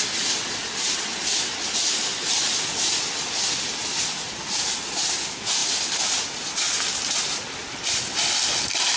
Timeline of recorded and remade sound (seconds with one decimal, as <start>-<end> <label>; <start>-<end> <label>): 0.0-9.0 recorded